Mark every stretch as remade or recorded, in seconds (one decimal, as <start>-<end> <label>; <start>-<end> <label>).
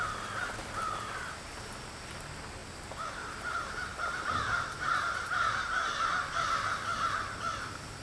0.0-8.0 recorded